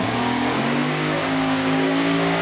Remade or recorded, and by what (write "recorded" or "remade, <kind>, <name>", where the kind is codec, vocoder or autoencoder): remade, codec, DAC